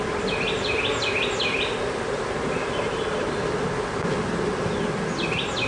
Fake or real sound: real